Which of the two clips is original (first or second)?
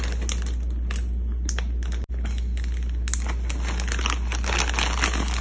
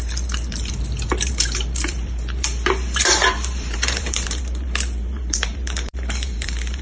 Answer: first